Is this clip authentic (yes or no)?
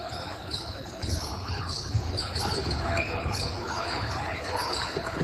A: no